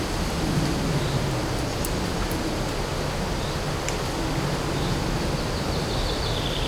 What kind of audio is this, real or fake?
real